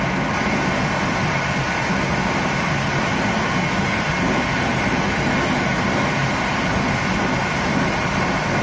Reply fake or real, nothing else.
real